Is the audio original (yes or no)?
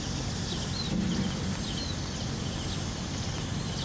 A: yes